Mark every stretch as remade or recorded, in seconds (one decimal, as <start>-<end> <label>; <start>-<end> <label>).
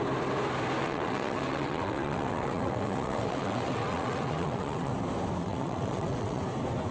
0.0-0.8 recorded; 0.8-4.9 remade; 4.9-5.4 recorded; 5.4-6.4 remade; 6.4-6.9 recorded